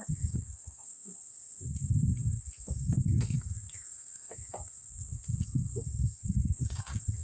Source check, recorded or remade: remade